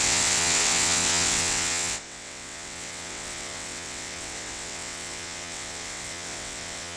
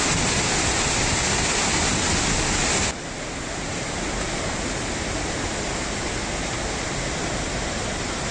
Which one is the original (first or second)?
second